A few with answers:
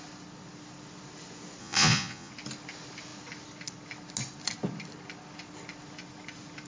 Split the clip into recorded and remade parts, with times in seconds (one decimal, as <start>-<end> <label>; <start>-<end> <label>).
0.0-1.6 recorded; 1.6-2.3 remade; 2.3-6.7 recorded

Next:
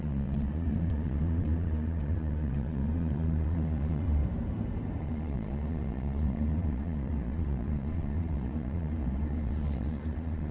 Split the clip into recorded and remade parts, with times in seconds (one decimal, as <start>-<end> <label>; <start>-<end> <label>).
0.0-4.2 remade; 4.2-5.0 recorded; 5.0-10.5 remade

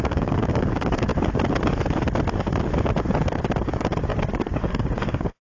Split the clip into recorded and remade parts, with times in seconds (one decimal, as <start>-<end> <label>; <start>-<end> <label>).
0.0-1.1 remade; 1.1-3.6 recorded; 3.6-5.5 remade

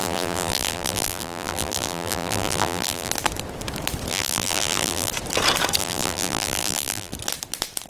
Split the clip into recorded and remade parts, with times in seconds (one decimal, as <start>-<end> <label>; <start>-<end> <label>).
0.0-3.1 remade; 3.1-4.1 recorded; 4.1-5.1 remade; 5.1-5.8 recorded; 5.8-7.1 remade; 7.1-7.9 recorded

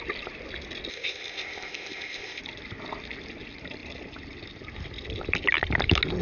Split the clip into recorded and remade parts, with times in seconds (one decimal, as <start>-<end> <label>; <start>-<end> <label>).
0.0-0.9 recorded; 0.9-2.4 remade; 2.4-6.2 recorded

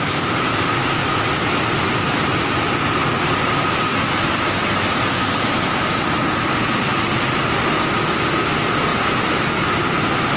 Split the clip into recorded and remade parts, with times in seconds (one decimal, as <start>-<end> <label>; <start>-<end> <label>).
0.0-10.4 recorded

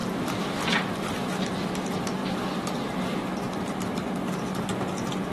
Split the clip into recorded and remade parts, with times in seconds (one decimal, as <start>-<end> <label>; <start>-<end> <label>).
0.0-5.3 recorded

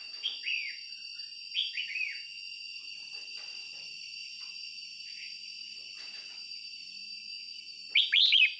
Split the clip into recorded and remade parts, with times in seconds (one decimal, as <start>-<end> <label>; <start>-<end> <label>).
0.0-8.6 recorded